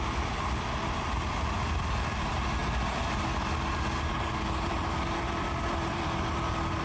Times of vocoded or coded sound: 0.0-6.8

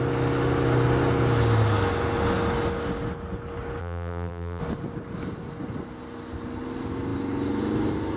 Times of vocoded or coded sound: 3.8-4.6

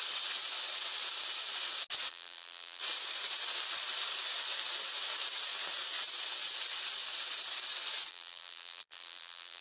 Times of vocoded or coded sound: 2.1-2.8; 8.1-9.6

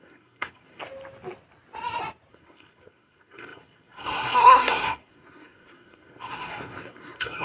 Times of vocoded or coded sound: 0.0-0.8; 2.3-7.4